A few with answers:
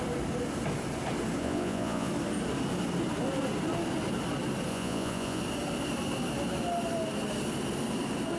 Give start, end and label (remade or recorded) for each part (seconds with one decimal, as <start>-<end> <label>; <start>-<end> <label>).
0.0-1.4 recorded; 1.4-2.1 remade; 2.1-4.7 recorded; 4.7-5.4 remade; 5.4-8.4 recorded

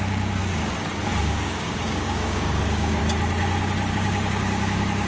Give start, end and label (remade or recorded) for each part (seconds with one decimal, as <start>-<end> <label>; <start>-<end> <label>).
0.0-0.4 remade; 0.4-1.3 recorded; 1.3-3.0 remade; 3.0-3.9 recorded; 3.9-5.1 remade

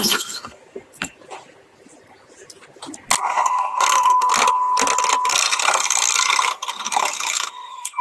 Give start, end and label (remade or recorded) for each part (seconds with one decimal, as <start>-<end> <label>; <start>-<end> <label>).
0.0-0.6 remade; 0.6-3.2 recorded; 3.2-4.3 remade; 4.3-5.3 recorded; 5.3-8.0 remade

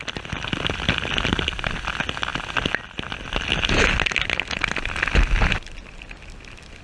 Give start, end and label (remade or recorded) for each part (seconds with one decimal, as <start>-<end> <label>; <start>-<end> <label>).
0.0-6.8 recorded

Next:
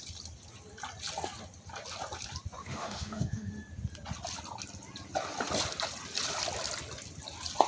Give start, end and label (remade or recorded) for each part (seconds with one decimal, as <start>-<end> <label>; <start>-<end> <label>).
0.0-2.6 recorded; 2.6-3.5 remade; 3.5-7.7 recorded

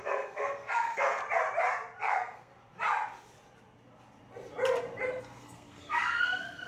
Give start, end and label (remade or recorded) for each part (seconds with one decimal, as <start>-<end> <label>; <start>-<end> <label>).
0.0-1.2 remade; 1.2-2.0 recorded; 2.0-2.5 remade; 2.5-5.2 recorded; 5.2-6.7 remade

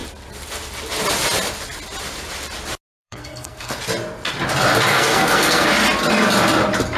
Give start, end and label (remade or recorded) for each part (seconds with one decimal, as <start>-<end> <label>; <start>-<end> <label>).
0.0-3.0 recorded; 3.0-3.8 remade; 3.8-4.9 recorded; 4.9-5.7 remade; 5.7-7.0 recorded